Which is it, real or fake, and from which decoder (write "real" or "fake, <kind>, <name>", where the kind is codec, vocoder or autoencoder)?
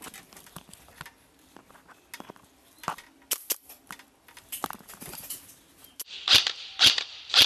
real